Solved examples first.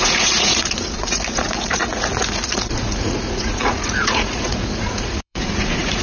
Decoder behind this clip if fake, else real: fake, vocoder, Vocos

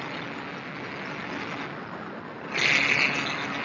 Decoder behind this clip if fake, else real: real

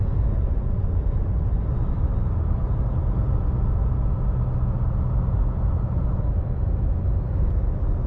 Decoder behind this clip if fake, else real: real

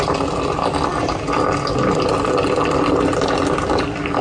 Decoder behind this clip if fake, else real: real